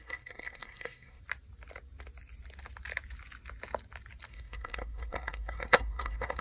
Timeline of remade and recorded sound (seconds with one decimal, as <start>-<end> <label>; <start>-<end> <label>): 0.0-1.2 remade; 1.2-4.3 recorded; 4.3-6.4 remade